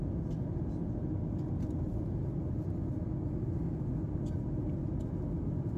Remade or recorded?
recorded